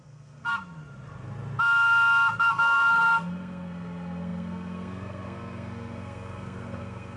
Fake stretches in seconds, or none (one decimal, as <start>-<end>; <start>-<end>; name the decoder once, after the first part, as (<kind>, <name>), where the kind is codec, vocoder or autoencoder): 0.0-0.5 (codec, SNAC); 2.4-7.2